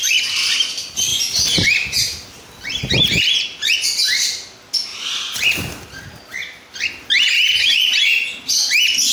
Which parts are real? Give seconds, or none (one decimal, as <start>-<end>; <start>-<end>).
0.0-9.1